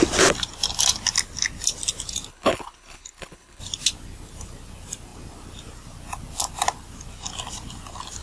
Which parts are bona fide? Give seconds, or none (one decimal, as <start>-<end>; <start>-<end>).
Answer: 0.0-2.3; 3.6-8.2